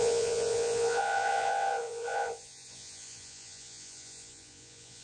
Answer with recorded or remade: remade